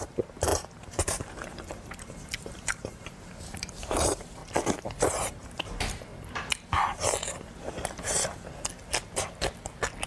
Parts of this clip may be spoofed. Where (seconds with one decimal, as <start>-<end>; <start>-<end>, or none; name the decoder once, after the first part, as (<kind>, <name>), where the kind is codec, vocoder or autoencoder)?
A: 0.0-4.4 (vocoder, BigVGAN v2); 5.3-6.1